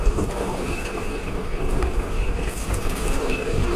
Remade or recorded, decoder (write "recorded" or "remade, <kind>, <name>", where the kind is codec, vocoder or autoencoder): remade, codec, DAC